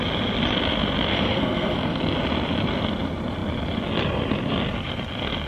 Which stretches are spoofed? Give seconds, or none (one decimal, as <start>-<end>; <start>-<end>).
1.1-2.0

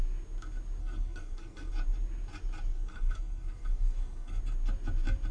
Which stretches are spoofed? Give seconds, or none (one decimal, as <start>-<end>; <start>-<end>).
0.8-1.7; 2.7-4.4